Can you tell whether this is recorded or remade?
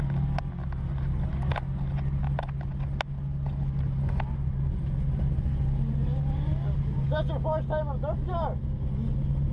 recorded